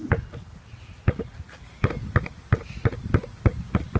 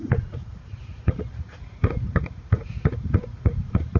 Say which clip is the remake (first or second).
second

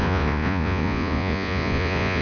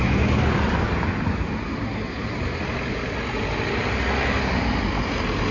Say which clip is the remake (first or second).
first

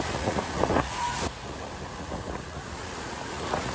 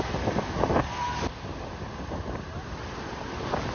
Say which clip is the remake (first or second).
first